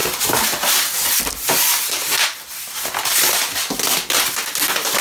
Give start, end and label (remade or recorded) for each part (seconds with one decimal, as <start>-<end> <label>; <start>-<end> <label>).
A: 0.0-5.0 recorded